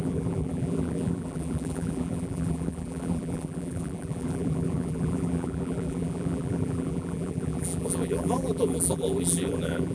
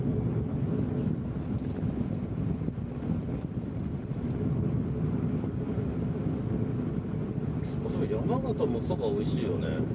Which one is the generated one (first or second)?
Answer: first